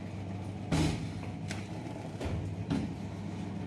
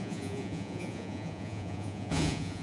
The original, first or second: first